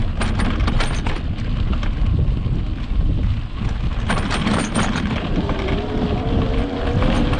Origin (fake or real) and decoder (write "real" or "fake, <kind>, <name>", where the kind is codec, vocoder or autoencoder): real